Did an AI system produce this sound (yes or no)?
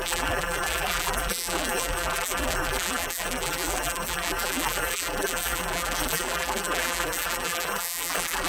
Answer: yes